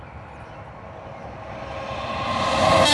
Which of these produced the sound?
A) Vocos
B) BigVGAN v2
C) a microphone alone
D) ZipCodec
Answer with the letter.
C